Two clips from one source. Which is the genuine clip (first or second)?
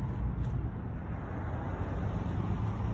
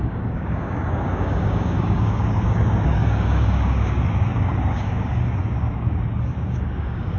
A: first